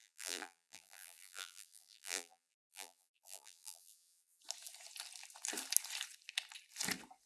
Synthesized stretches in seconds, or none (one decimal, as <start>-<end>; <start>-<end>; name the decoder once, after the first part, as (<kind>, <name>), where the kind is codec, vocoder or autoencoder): 0.0-4.4 (vocoder, BigVGAN v2)